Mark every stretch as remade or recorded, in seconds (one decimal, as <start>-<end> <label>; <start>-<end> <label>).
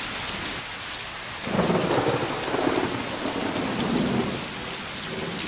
0.0-5.5 recorded